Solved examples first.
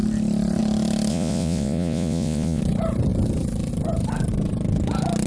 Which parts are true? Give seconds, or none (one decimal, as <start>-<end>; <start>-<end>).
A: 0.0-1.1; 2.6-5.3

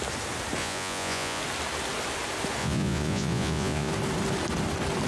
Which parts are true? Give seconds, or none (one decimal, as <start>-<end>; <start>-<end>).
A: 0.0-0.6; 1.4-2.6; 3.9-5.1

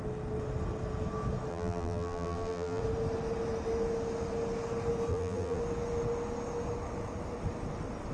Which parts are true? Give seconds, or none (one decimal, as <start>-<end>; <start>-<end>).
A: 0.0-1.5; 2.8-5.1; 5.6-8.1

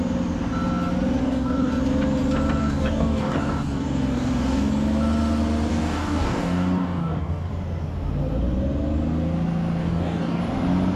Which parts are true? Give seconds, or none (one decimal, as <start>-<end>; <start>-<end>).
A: 0.0-1.2; 1.7-2.6; 4.7-5.7; 7.5-9.8; 10.4-11.0